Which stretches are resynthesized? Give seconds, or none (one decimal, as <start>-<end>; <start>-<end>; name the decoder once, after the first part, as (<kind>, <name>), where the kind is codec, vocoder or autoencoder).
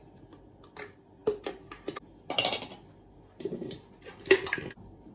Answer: none